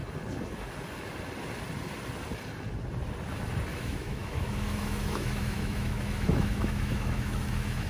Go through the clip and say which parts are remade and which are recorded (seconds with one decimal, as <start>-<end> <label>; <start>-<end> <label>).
0.0-3.7 recorded; 3.7-7.9 remade